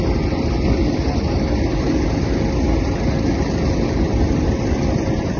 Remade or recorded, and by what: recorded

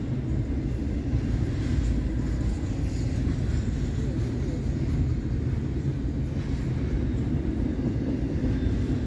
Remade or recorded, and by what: recorded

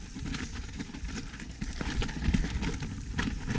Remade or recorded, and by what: recorded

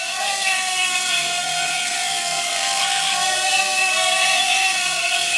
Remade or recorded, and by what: remade, codec, SNAC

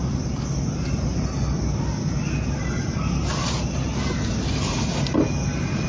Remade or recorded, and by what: recorded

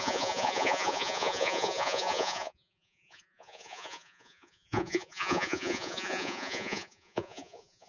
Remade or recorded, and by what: remade, vocoder, Vocos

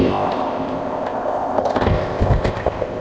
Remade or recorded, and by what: remade, codec, ZipCodec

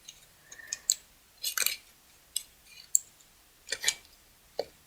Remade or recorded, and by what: recorded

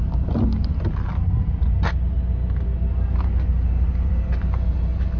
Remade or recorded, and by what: recorded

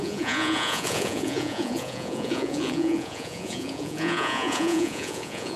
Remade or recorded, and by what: remade, vocoder, Vocos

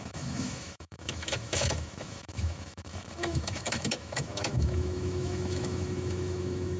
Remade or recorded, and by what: remade, autoencoder, DAC-VAE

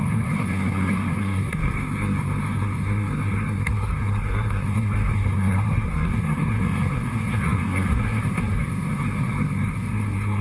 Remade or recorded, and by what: remade, codec, SNAC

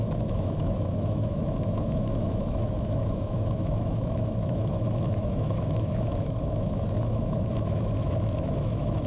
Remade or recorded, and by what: remade, autoencoder, DAC-VAE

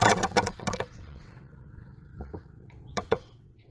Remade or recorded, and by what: remade, vocoder, WaveNeXt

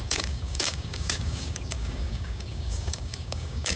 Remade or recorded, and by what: remade, codec, DAC